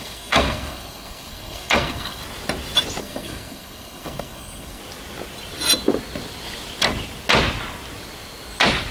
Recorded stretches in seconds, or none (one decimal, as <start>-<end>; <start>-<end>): 2.2-3.0; 4.8-8.9